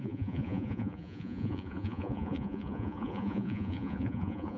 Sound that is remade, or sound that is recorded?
remade